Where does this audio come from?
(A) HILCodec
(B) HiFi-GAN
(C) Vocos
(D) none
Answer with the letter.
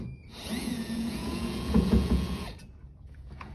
C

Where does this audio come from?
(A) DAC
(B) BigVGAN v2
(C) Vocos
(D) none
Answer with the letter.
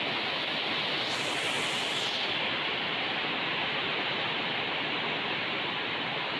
D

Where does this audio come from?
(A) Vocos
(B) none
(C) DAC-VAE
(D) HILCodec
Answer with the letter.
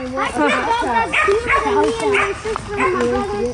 B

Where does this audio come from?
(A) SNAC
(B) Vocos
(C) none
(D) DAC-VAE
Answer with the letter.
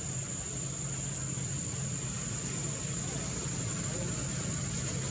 C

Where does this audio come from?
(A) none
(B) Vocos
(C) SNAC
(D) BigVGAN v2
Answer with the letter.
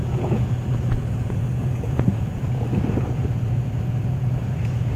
B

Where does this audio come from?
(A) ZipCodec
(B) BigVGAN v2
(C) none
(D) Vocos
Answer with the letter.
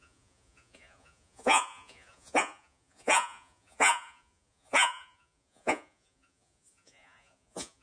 D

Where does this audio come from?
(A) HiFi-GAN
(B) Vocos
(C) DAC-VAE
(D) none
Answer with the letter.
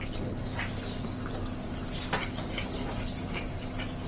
D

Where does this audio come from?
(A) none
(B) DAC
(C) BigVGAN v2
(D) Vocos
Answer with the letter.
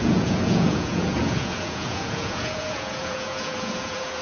D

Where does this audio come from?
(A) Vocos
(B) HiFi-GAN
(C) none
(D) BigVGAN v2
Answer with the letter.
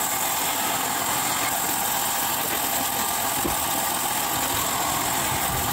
C